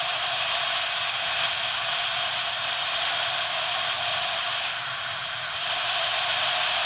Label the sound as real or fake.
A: real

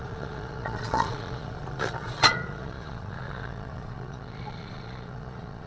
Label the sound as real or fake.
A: fake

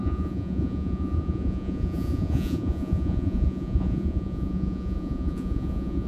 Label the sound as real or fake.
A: fake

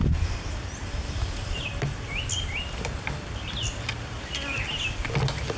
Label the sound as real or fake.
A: real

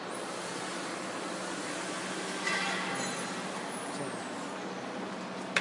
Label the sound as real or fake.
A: real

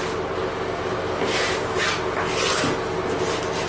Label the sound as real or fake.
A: real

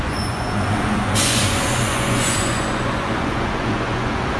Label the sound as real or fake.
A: fake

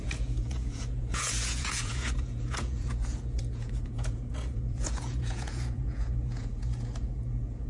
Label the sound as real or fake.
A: fake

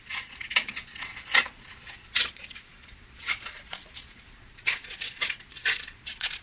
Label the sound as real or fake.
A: fake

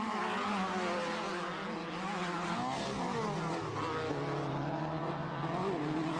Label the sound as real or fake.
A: real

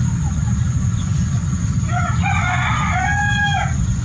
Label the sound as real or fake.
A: fake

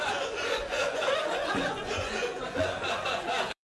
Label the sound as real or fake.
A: fake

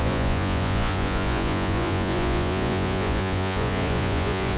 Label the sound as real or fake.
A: fake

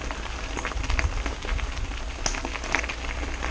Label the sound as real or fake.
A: real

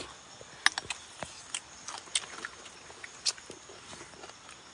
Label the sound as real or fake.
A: real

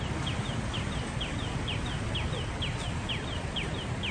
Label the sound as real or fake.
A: real